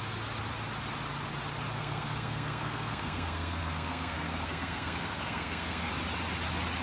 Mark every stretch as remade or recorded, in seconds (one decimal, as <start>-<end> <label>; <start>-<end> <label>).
0.0-1.8 recorded; 1.8-5.9 remade; 5.9-6.8 recorded